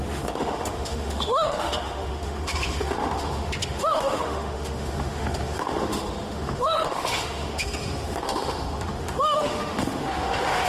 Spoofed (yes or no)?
yes